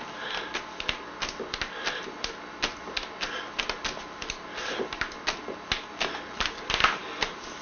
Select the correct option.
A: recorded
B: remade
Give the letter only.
A